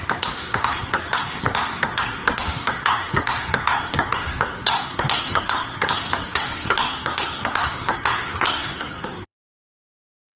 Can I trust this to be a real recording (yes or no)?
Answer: no